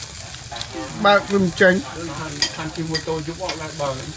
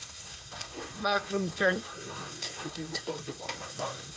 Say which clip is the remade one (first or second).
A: second